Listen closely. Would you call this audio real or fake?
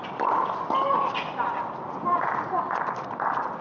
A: real